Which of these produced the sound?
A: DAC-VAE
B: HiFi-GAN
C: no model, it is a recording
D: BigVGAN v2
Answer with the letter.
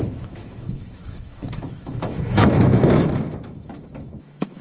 A